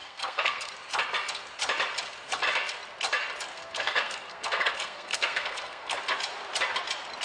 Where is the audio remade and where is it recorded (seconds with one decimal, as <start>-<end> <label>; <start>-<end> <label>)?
0.0-0.7 remade; 0.7-3.5 recorded; 3.5-6.0 remade; 6.0-7.2 recorded